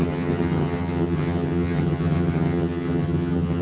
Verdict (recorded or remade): remade